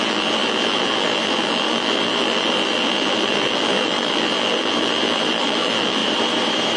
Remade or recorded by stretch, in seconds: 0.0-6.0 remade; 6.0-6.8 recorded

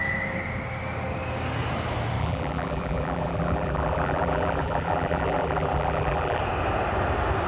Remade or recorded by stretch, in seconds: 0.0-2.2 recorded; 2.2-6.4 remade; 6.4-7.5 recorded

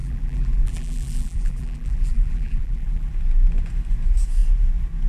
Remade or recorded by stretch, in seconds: 0.0-3.1 remade; 3.1-5.1 recorded

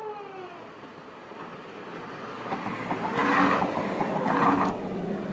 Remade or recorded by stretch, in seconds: 0.0-5.3 recorded

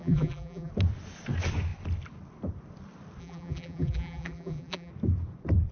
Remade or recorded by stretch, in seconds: 0.0-0.7 remade; 0.7-3.2 recorded; 3.2-4.9 remade; 4.9-5.7 recorded

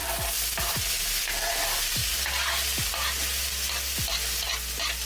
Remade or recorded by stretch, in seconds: 0.0-0.6 recorded; 0.6-2.0 remade; 2.0-5.1 recorded

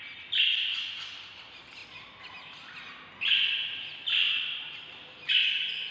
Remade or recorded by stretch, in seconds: 0.0-5.9 recorded

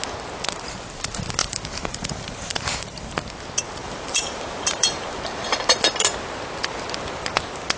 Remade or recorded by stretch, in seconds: 0.0-1.4 recorded; 1.4-3.2 remade; 3.2-3.8 recorded; 3.8-5.4 remade; 5.4-7.8 recorded